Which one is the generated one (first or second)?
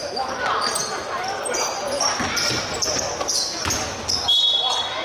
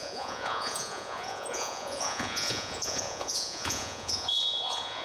second